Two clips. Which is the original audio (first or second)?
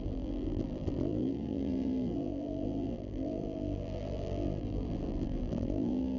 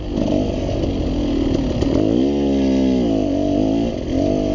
second